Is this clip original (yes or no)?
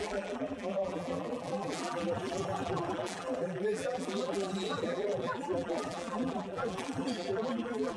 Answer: no